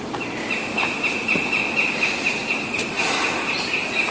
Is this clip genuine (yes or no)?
yes